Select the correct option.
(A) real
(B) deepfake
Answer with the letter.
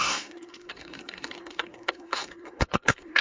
B